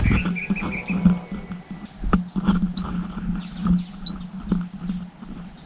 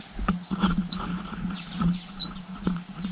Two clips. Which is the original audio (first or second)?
first